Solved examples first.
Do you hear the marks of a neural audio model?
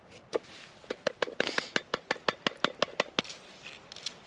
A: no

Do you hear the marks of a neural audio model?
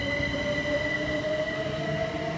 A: yes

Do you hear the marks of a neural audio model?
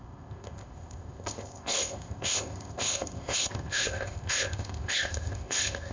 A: yes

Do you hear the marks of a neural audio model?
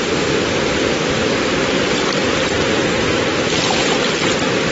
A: no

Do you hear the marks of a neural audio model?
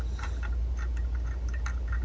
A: no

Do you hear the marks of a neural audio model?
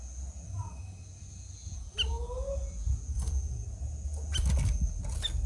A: no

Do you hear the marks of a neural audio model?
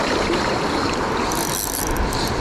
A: no